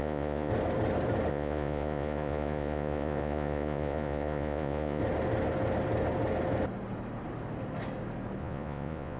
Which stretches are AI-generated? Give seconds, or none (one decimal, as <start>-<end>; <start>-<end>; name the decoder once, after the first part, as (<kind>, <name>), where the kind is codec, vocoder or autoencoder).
0.0-0.5 (vocoder, Vocos); 1.3-5.0; 8.4-9.2